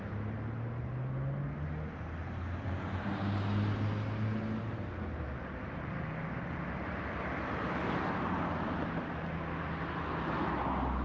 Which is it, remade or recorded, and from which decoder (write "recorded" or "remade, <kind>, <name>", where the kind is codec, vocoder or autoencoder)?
recorded